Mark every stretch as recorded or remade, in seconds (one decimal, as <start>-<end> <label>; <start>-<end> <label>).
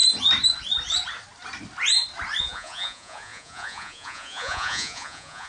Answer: 0.0-2.4 recorded; 2.4-5.5 remade